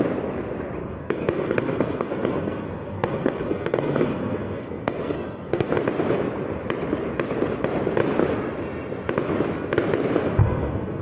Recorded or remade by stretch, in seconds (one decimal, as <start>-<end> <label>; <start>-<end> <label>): 0.0-0.8 recorded; 0.8-5.7 remade; 5.7-10.4 recorded; 10.4-11.0 remade